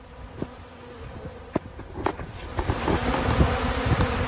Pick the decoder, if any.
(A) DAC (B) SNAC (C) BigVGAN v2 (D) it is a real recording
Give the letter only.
D